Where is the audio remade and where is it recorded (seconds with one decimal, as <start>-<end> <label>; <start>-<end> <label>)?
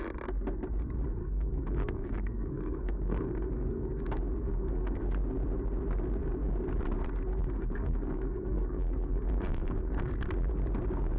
0.0-1.2 recorded; 1.2-4.0 remade; 4.0-4.4 recorded; 4.4-5.0 remade; 5.0-7.3 recorded; 7.3-10.1 remade; 10.1-11.2 recorded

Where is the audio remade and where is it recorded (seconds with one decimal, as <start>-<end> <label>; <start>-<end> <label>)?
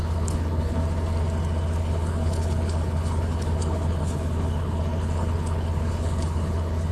0.0-0.8 remade; 0.8-1.8 recorded; 1.8-6.9 remade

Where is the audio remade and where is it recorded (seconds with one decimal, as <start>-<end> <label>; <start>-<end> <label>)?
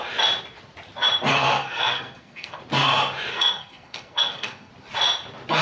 0.0-1.3 recorded; 1.3-2.6 remade; 2.6-3.3 recorded; 3.3-4.7 remade; 4.7-5.6 recorded